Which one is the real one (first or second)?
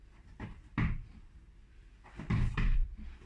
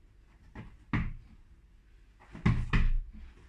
second